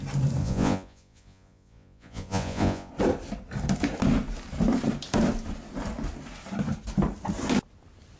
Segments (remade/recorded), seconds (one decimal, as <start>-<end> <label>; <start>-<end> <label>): 0.0-0.4 recorded; 0.4-2.9 remade; 2.9-8.2 recorded